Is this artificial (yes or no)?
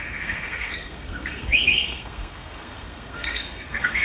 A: yes